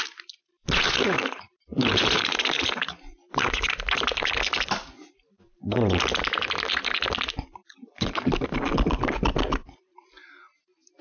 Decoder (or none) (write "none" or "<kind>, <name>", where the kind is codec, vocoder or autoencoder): vocoder, BigVGAN v2